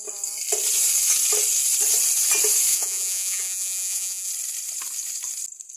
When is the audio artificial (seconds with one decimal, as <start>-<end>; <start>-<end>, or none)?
2.7-4.3